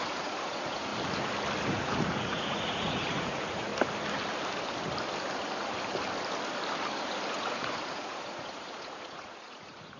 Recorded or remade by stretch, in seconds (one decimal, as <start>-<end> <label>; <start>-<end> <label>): 0.0-0.9 remade; 0.9-1.7 recorded; 1.7-3.7 remade; 3.7-7.3 recorded; 7.3-10.0 remade